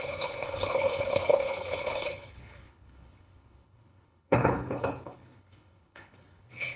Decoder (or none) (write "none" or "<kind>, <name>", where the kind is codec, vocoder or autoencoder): codec, HILCodec